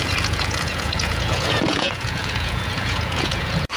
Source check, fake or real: fake